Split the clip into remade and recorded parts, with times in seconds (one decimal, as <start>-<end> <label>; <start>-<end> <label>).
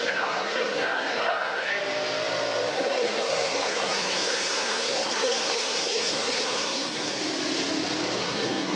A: 0.0-1.7 remade; 1.7-2.7 recorded; 2.7-7.2 remade; 7.2-8.2 recorded; 8.2-8.8 remade